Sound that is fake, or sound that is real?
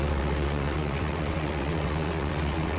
fake